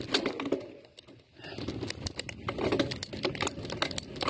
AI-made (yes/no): no